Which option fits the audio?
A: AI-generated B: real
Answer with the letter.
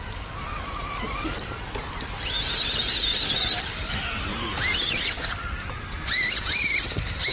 B